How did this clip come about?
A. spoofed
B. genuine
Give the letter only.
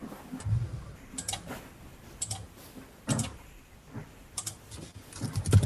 A